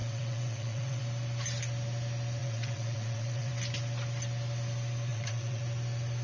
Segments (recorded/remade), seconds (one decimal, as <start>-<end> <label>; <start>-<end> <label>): 0.0-1.0 remade; 1.0-2.4 recorded; 2.4-3.5 remade; 3.5-5.1 recorded; 5.1-5.6 remade; 5.6-6.2 recorded